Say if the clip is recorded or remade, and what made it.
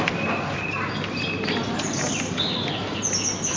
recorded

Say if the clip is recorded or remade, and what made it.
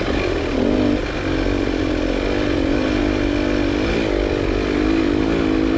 recorded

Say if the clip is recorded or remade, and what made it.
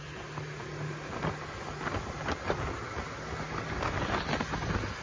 recorded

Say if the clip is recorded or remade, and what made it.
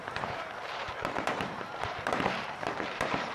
remade, vocoder, BigVGAN v2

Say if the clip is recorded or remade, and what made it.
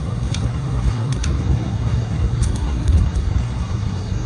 remade, codec, SNAC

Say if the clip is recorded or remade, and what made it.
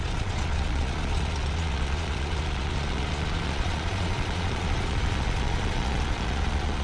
remade, vocoder, Vocos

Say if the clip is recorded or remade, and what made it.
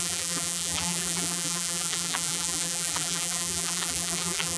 remade, vocoder, BigVGAN v2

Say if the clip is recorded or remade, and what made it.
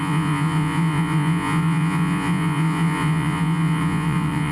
remade, vocoder, Vocos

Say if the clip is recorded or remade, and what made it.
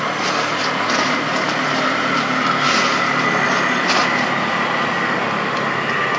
recorded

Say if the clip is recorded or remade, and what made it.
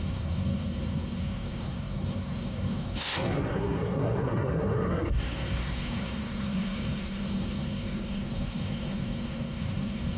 remade, codec, SNAC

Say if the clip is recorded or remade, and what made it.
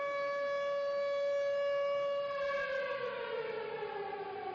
recorded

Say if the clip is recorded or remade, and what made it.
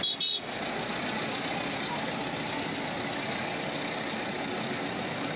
recorded